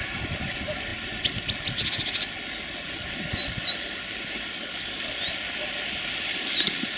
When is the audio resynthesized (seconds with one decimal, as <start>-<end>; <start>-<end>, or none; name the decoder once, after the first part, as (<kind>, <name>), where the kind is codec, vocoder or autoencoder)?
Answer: none